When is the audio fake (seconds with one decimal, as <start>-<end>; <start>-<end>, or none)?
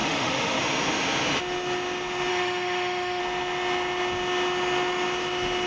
0.0-0.6; 2.3-3.2